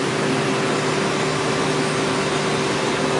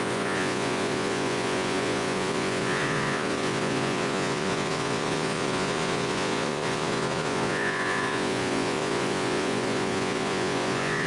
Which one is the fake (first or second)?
second